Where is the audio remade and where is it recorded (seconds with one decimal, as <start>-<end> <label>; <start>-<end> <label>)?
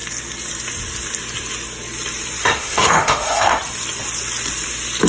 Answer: 0.0-2.4 recorded; 2.4-3.6 remade; 3.6-5.1 recorded